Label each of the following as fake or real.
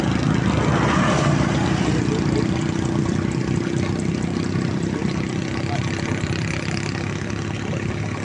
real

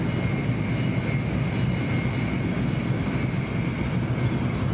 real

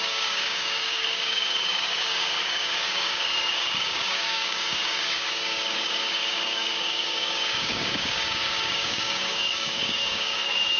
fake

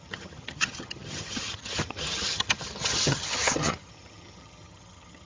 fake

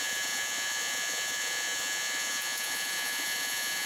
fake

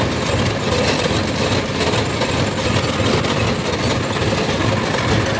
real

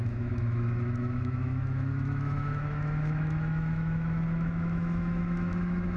fake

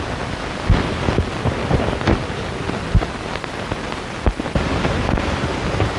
real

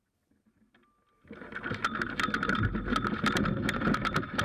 real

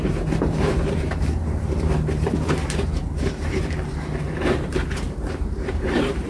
fake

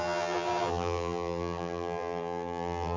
fake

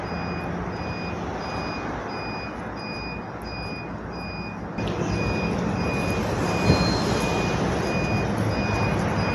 real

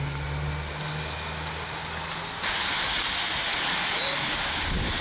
real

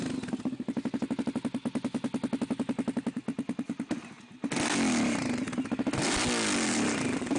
real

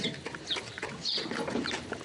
fake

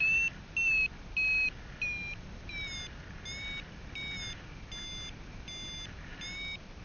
real